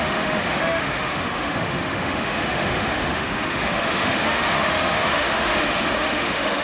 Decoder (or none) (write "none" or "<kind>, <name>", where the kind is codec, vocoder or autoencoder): autoencoder, DAC-VAE